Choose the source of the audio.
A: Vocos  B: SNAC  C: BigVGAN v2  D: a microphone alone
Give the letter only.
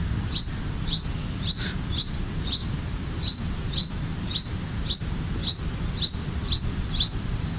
D